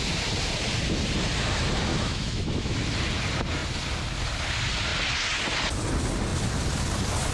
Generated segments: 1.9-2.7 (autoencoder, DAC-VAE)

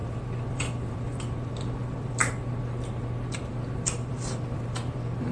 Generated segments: 0.0-2.2 (vocoder, BigVGAN v2); 3.4-5.3

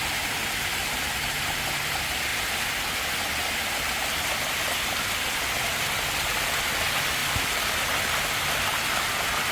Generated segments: none

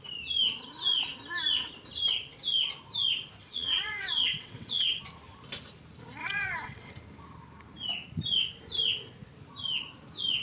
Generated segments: 3.4-5.0 (vocoder, WaveNeXt); 6.2-6.9

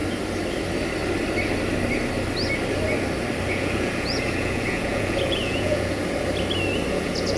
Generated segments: 3.5-6.0 (vocoder, Vocos); 6.9-7.4